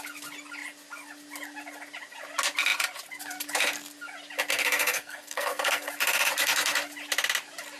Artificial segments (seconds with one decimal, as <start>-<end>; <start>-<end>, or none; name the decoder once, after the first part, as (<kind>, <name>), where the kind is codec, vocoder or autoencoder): 4.5-5.9 (codec, SNAC)